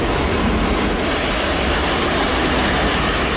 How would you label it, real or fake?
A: real